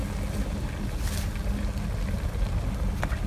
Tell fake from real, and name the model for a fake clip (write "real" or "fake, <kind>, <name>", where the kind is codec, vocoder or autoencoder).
real